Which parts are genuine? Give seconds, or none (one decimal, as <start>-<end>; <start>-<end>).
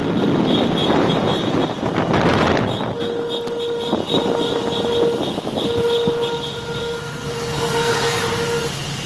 0.0-6.8; 8.2-9.1